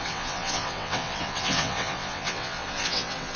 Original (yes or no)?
no